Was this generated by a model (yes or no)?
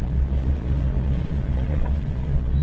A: yes